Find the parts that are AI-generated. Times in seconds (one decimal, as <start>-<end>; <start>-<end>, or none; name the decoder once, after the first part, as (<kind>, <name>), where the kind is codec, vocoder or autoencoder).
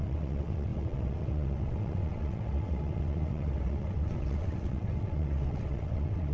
0.0-6.3 (vocoder, WaveNeXt)